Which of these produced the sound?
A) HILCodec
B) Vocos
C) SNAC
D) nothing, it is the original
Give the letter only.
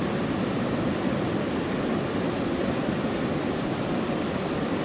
D